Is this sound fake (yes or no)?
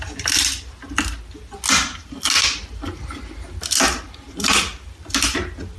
no